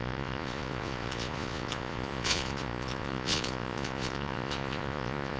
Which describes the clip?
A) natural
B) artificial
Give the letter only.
B